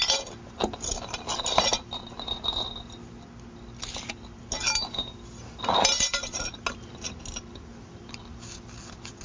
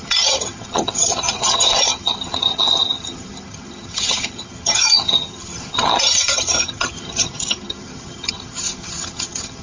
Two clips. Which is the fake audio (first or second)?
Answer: second